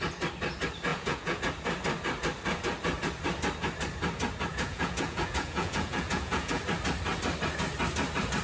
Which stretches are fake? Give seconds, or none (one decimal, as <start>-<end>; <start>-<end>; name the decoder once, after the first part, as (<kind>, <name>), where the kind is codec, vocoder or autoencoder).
0.9-1.4 (vocoder, Vocos); 4.5-6.6